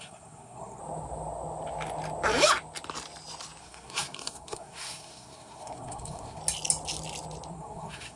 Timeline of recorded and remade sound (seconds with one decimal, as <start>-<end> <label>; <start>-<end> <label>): 0.0-0.8 remade; 0.8-3.6 recorded; 3.6-6.4 remade; 6.4-7.5 recorded; 7.5-8.2 remade